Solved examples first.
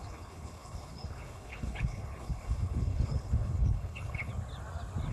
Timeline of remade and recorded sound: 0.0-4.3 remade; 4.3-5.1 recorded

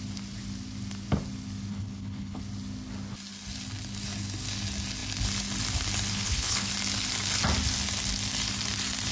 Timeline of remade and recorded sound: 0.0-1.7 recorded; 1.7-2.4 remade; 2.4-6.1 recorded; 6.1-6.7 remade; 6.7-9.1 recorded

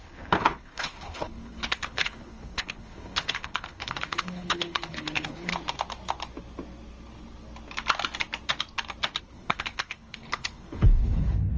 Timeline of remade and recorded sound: 0.0-5.5 remade; 5.5-9.2 recorded; 9.2-11.6 remade

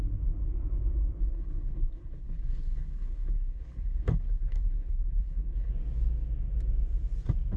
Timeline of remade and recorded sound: 0.0-1.2 recorded; 1.2-5.7 remade; 5.7-7.6 recorded

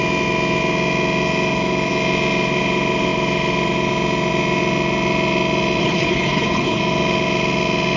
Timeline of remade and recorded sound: 0.0-5.8 recorded; 5.8-6.8 remade; 6.8-8.0 recorded

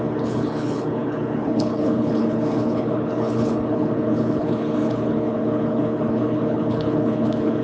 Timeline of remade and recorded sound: 0.0-7.6 remade

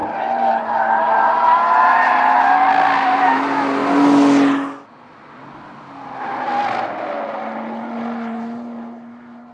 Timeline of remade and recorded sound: 0.0-9.5 recorded